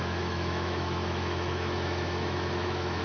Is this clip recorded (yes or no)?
no